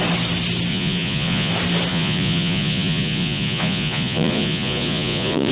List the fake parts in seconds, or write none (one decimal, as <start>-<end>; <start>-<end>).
0.7-1.5; 1.9-5.5